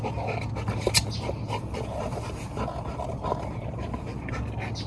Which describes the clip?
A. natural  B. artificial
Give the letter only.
A